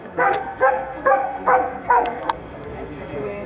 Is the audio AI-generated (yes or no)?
yes